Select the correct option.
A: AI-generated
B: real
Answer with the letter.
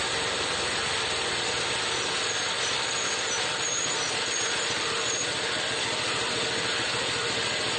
B